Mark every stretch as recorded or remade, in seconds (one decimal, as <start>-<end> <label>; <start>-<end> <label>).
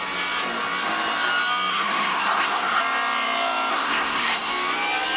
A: 0.0-1.7 recorded; 1.7-2.8 remade; 2.8-3.7 recorded; 3.7-4.5 remade; 4.5-5.2 recorded